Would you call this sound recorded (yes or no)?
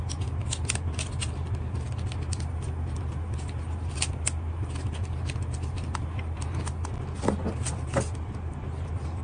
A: yes